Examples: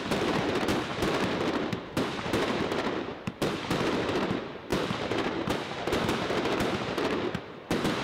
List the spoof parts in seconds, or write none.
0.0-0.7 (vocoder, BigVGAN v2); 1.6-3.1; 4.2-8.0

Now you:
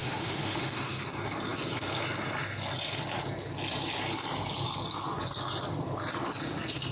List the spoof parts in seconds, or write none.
0.0-1.0 (autoencoder, DAC-VAE)

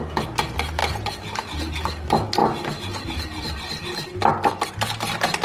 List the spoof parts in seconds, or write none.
none

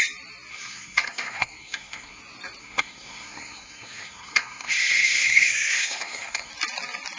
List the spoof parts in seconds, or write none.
0.5-2.2 (codec, SNAC); 2.6-6.5